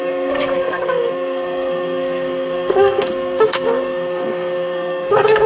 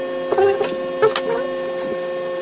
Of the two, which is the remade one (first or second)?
first